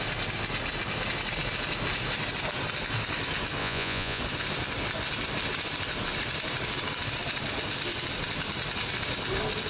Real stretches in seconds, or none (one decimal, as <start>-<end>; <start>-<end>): 0.0-3.6; 4.2-9.7